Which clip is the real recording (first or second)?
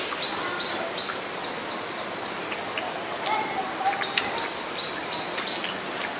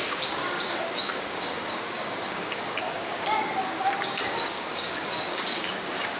first